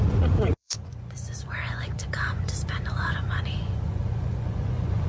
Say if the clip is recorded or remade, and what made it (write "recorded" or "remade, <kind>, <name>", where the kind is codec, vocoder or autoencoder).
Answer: remade, vocoder, Vocos